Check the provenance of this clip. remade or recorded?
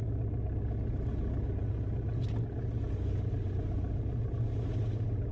recorded